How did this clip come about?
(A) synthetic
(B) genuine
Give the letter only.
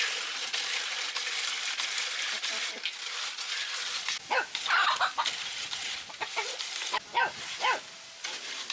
B